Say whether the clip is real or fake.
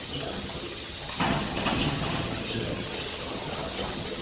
fake